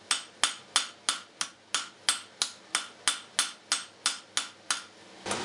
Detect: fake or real real